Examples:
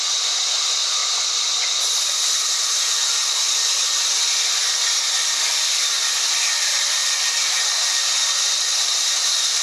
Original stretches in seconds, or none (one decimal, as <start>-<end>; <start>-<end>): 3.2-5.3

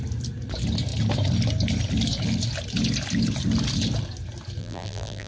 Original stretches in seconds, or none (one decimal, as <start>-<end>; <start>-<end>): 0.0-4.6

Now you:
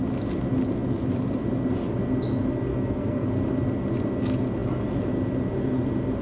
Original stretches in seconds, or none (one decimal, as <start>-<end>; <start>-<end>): 0.0-2.7; 3.3-6.2

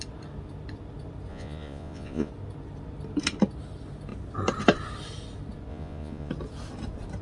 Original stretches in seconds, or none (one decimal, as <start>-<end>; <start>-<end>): 0.0-1.3; 2.3-5.7; 6.3-7.2

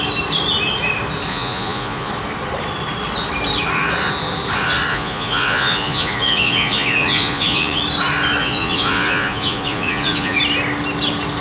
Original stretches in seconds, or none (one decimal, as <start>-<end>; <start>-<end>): 0.0-1.3; 2.1-4.9; 7.8-8.4; 10.4-11.4